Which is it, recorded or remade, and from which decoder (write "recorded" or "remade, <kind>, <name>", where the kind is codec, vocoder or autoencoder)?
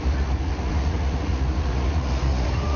remade, vocoder, Vocos